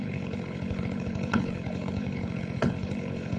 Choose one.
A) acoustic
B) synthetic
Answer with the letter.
B